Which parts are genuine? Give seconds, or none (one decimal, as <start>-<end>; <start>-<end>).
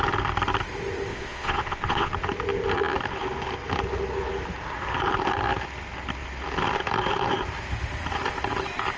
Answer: 0.0-1.1; 2.1-9.0